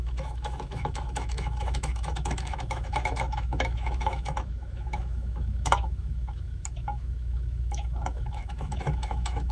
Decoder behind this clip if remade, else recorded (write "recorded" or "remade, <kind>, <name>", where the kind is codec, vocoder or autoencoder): remade, autoencoder, DAC-VAE